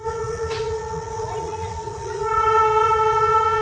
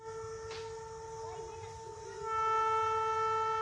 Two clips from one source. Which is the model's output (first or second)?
first